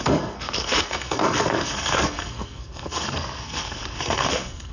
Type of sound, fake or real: fake